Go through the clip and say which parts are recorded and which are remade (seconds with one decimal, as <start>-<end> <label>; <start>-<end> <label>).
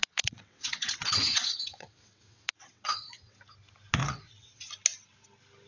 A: 0.0-3.4 remade; 3.4-4.0 recorded; 4.0-4.7 remade; 4.7-5.7 recorded